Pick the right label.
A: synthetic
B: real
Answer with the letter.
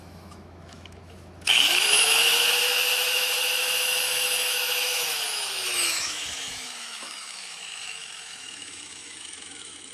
A